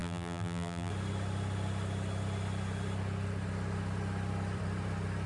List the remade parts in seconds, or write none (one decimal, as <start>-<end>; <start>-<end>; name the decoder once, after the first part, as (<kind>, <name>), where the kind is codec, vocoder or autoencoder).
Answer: 0.0-0.9 (vocoder, BigVGAN v2)